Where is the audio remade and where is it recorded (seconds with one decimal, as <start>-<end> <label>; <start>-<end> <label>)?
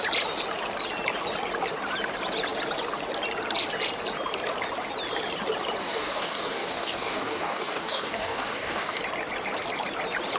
0.0-5.8 recorded; 5.8-9.0 remade; 9.0-10.4 recorded